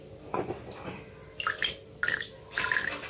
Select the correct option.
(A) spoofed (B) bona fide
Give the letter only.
B